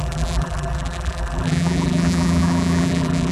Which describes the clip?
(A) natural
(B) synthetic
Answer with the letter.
B